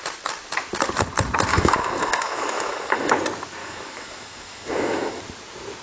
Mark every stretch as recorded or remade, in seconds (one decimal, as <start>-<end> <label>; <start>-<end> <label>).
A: 0.0-1.5 recorded; 1.5-3.1 remade; 3.1-3.6 recorded; 3.6-5.2 remade; 5.2-5.8 recorded